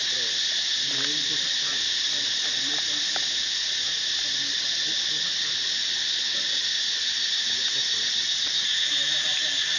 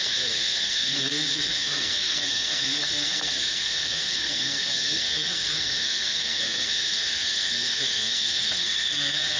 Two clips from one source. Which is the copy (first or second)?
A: second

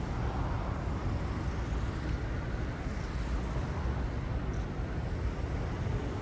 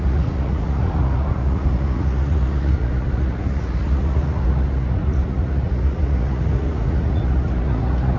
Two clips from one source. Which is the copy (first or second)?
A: second